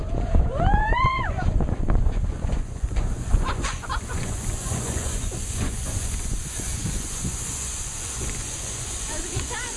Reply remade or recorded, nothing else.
remade